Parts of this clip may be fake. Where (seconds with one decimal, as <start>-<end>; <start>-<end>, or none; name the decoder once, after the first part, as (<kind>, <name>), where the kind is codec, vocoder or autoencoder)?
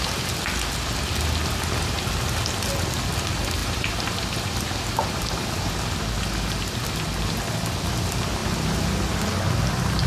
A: 3.6-5.5 (vocoder, BigVGAN v2)